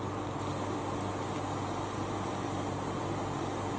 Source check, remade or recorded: recorded